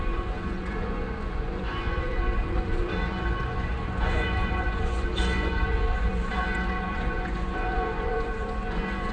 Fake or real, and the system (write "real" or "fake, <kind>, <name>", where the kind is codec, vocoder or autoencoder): fake, vocoder, Vocos